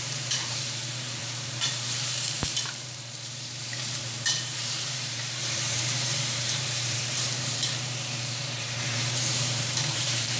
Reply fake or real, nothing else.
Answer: fake